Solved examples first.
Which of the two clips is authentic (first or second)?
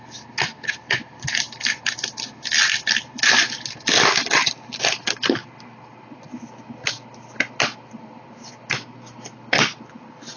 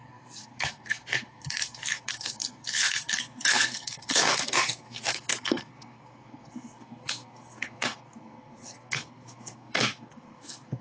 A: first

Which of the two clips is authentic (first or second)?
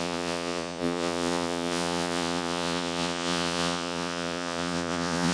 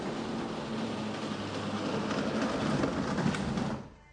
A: second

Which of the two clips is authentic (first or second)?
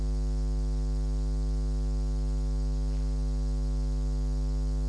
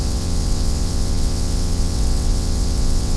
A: first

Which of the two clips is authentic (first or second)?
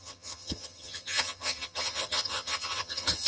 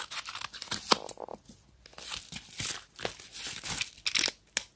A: second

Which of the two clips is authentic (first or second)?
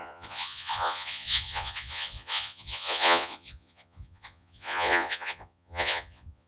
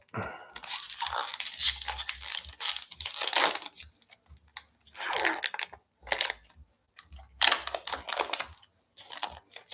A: second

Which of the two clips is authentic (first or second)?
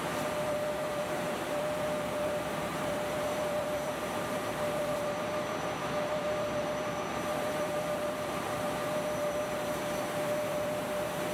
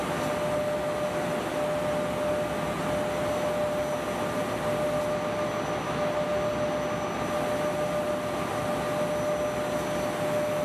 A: second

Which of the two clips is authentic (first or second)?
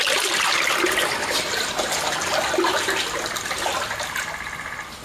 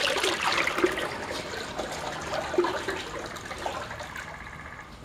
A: second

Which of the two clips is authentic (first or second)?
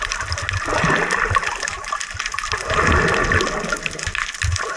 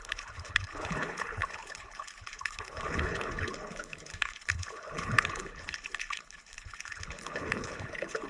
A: first